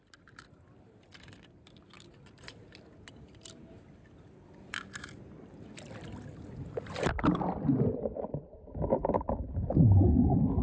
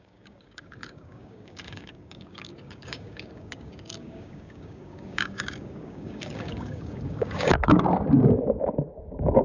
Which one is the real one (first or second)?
first